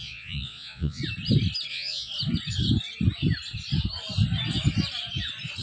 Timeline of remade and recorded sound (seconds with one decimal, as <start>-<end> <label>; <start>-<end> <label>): 0.0-1.0 remade; 1.0-1.7 recorded; 1.7-2.1 remade; 2.1-5.6 recorded